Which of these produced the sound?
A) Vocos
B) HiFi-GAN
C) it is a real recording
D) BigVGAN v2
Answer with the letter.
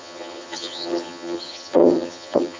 B